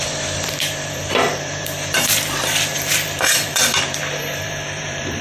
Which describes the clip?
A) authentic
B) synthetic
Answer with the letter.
B